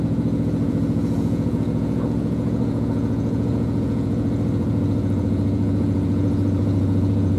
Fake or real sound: fake